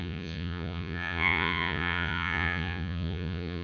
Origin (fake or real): fake